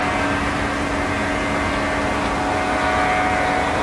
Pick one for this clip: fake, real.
real